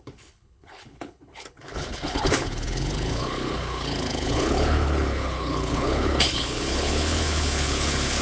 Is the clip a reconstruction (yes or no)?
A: yes